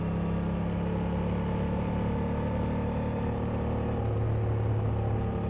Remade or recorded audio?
recorded